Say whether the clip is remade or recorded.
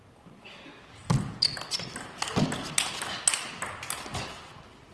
recorded